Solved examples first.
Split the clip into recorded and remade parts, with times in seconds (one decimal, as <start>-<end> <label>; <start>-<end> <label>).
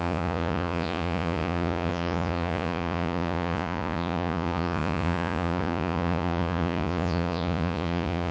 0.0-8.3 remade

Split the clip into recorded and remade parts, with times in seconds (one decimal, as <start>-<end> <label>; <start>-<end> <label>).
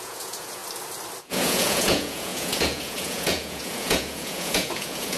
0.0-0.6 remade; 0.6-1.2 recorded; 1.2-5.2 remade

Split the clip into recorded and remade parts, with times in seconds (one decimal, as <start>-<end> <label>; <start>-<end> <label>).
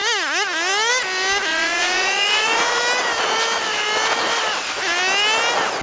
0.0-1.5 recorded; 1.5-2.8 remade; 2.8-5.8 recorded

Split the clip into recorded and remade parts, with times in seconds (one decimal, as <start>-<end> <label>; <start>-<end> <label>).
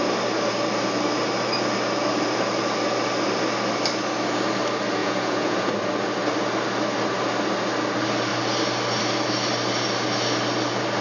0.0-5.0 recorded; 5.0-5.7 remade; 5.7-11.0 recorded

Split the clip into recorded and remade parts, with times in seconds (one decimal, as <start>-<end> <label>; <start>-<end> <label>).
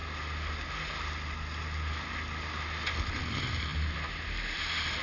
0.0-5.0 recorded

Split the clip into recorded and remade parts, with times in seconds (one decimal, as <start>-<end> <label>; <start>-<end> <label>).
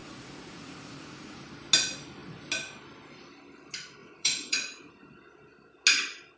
0.0-1.5 remade; 1.5-4.0 recorded; 4.0-4.9 remade; 4.9-6.4 recorded